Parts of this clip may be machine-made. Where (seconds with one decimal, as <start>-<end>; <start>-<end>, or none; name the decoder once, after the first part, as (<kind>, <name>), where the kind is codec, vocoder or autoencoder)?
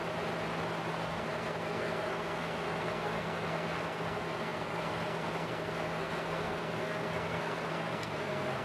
0.9-8.6 (codec, SNAC)